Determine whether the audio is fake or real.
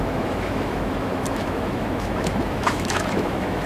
fake